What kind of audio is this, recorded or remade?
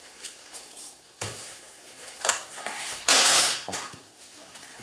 remade